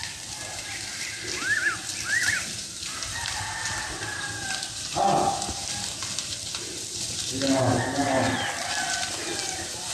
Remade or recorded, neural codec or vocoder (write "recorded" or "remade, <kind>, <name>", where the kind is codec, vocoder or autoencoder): recorded